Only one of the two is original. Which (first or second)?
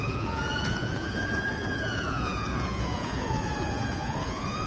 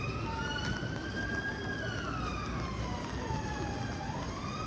second